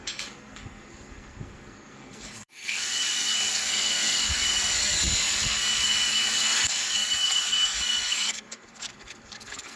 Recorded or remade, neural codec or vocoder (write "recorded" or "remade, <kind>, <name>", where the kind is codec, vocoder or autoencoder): remade, codec, SNAC